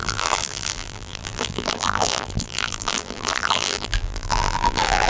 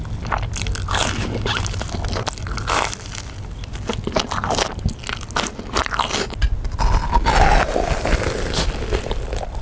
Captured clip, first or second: second